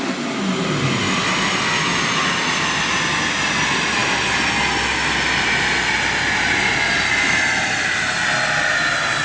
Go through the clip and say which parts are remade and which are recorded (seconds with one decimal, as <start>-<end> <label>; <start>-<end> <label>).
0.0-9.2 recorded